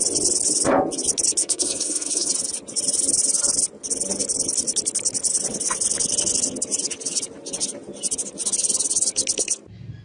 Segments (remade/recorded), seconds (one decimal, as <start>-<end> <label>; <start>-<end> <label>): 0.0-1.4 recorded; 1.4-2.3 remade; 2.3-10.0 recorded